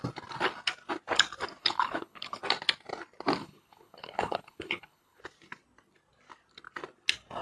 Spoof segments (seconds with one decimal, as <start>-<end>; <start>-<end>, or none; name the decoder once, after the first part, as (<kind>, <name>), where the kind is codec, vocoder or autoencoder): 1.6-2.4 (codec, HILCodec); 3.4-5.2